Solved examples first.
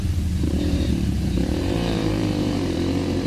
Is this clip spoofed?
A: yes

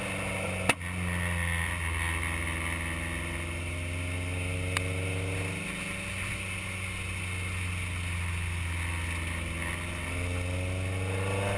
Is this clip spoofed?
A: no